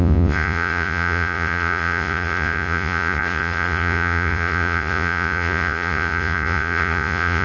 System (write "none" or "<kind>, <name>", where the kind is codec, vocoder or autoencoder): vocoder, Vocos